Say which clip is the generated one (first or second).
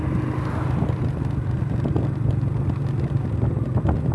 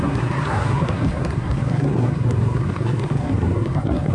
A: second